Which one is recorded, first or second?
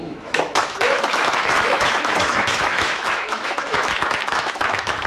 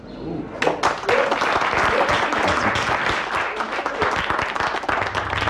second